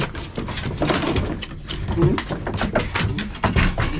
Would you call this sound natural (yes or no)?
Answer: yes